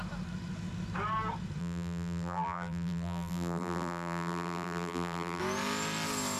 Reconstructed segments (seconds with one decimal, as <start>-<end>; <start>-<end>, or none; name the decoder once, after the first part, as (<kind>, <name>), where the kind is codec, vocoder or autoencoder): 1.6-5.4 (vocoder, BigVGAN v2)